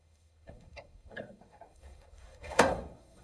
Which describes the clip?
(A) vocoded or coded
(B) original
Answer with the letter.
A